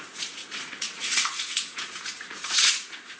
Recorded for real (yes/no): no